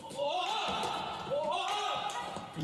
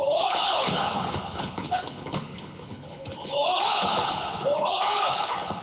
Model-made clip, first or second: second